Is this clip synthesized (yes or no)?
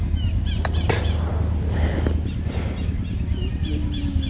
no